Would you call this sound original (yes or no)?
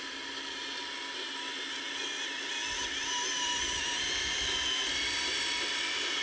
yes